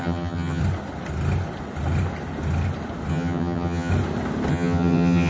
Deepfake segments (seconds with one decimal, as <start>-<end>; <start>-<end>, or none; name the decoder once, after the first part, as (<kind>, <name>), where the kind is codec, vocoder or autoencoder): 0.0-0.6 (vocoder, HiFi-GAN); 3.1-3.9; 4.5-5.3